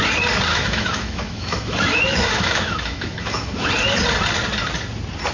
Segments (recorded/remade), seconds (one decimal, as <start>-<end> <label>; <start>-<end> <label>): 0.0-0.5 recorded; 0.5-3.7 remade; 3.7-5.3 recorded